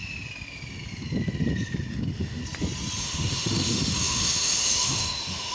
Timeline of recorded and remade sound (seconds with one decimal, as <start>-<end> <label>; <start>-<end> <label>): 0.0-1.9 recorded; 1.9-2.4 remade; 2.4-3.0 recorded; 3.0-5.5 remade